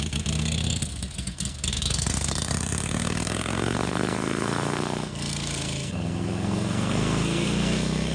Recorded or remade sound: remade